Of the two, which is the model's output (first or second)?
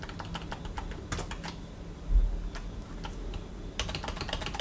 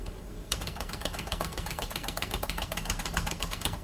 second